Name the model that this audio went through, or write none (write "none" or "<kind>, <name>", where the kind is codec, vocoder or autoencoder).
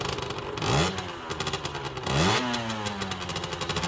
none